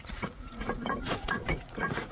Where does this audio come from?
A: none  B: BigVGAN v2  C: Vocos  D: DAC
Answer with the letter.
C